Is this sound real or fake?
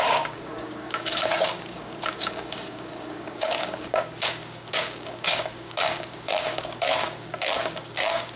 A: fake